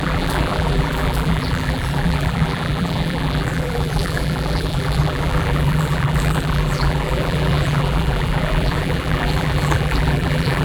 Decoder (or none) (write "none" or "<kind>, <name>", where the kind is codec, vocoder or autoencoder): vocoder, BigVGAN v2